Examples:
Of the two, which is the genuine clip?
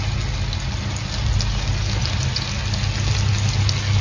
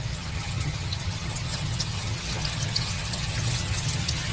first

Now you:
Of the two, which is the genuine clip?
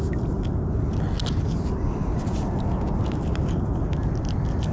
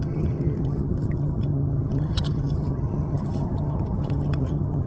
first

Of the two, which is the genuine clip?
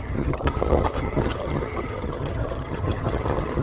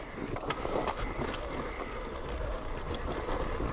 second